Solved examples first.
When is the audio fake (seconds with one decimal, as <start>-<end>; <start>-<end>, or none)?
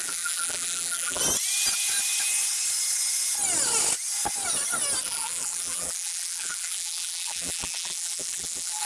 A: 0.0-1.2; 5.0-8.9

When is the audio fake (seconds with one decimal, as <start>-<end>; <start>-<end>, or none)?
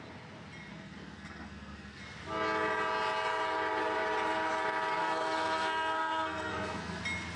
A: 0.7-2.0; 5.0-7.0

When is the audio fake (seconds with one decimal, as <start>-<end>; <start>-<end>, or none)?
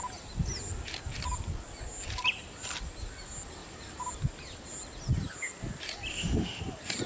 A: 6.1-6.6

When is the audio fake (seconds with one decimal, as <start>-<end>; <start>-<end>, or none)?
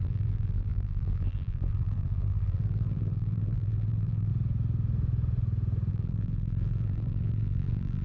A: 0.0-4.3; 5.9-8.0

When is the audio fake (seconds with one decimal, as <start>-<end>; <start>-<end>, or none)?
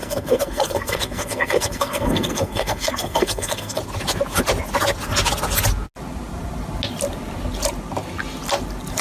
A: 0.0-3.8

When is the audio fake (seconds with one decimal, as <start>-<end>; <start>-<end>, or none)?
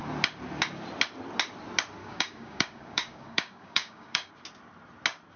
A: 2.0-4.3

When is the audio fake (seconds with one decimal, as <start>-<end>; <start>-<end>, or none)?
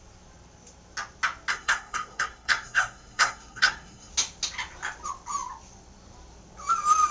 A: 1.5-4.1